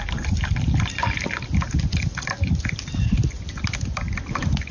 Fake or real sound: real